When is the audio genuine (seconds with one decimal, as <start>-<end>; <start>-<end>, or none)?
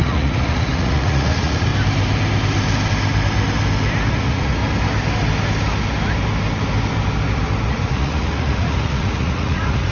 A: 1.7-4.1; 4.6-7.7